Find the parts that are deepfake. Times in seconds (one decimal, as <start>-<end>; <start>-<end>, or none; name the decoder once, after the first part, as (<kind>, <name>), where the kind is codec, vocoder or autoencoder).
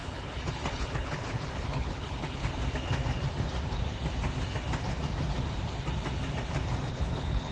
0.0-2.4 (codec, HILCodec); 6.9-7.5